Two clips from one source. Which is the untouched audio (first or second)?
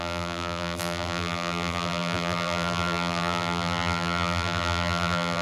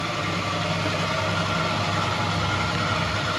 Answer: second